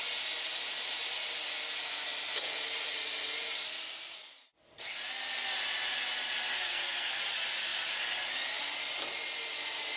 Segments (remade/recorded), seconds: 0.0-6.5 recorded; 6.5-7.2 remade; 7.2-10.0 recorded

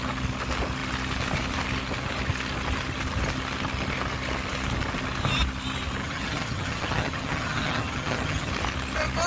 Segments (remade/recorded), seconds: 0.0-6.0 recorded; 6.0-8.5 remade; 8.5-9.3 recorded

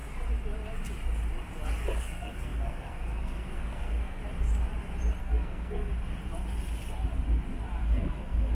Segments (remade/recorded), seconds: 0.0-2.0 recorded; 2.0-4.2 remade; 4.2-5.2 recorded; 5.2-5.9 remade; 5.9-7.8 recorded; 7.8-8.5 remade